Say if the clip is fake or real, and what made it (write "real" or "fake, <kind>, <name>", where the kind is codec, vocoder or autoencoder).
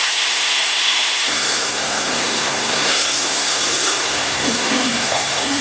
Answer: fake, codec, SNAC